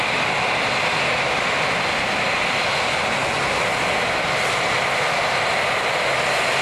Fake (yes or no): no